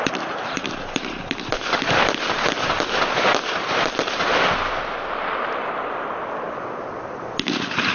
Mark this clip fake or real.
fake